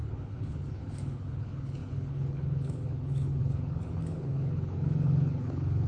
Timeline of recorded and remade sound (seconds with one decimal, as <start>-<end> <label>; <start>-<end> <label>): 0.0-5.9 remade